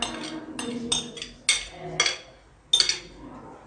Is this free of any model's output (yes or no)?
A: yes